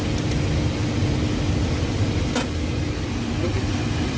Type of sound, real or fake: real